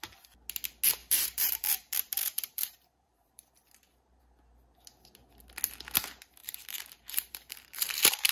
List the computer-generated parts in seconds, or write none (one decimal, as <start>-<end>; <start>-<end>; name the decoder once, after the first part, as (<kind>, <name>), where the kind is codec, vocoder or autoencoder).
1.0-4.2 (vocoder, BigVGAN v2); 6.4-8.3